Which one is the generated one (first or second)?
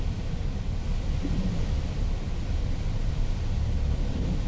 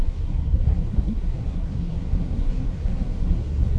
second